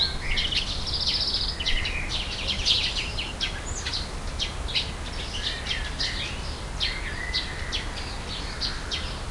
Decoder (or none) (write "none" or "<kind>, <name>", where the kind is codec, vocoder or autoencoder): none